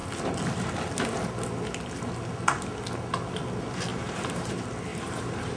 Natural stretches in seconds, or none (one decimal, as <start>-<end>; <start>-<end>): 0.0-3.9; 4.5-4.9